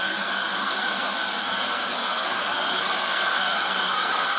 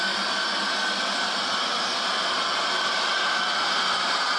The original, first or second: second